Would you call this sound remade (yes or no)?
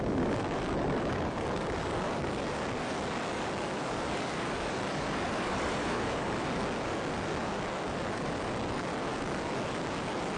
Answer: yes